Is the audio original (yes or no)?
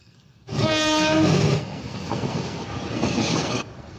no